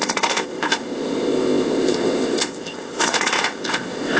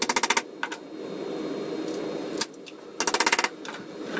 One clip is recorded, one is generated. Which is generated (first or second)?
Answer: first